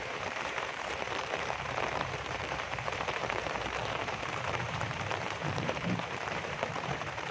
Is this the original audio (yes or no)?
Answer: no